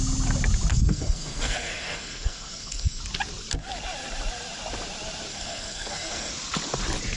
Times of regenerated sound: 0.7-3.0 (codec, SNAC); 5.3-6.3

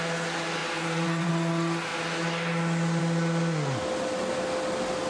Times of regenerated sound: 0.6-1.3 (vocoder, BigVGAN v2)